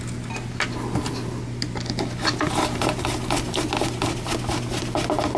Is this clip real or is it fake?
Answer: real